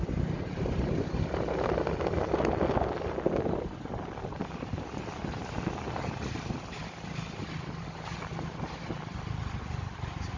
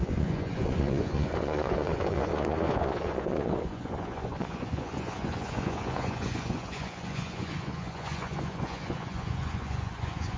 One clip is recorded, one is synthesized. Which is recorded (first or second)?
first